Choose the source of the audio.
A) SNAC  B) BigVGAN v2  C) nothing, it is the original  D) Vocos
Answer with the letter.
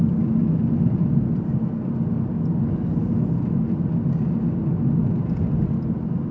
C